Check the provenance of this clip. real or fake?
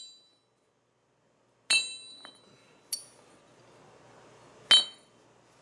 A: real